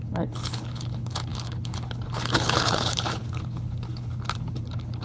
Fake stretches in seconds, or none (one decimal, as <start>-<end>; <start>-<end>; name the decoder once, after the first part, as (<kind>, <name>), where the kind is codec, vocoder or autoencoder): 0.0-5.0 (codec, HILCodec)